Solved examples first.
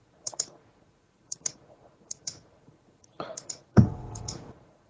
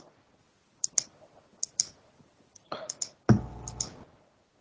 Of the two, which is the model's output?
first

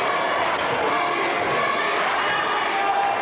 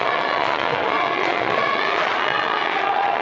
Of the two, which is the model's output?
second